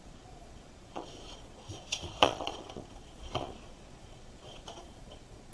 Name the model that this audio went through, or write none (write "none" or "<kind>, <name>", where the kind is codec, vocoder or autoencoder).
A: vocoder, Vocos